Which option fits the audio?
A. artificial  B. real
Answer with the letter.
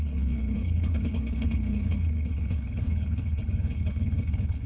A